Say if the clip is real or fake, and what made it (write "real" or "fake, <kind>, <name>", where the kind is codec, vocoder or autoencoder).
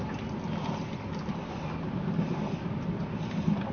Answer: real